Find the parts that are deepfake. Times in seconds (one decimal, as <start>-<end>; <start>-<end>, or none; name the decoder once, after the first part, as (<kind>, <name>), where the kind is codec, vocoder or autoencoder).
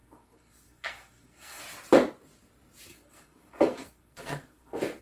0.0-1.6 (codec, SNAC); 2.9-5.0